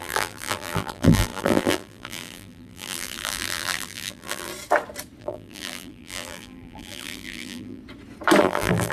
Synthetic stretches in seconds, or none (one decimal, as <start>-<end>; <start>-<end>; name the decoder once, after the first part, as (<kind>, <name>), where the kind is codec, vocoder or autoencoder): 0.0-4.5 (vocoder, BigVGAN v2); 5.2-7.8; 8.4-8.9